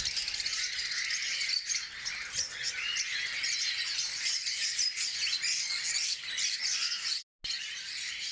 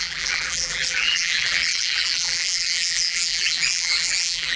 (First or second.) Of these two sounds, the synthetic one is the second